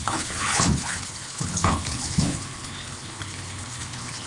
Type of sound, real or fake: fake